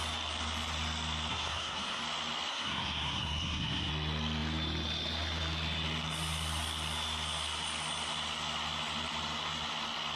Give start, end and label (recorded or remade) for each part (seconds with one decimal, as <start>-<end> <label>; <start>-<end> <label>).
0.0-1.3 recorded; 1.3-2.0 remade; 2.0-2.5 recorded; 2.5-3.9 remade; 3.9-10.2 recorded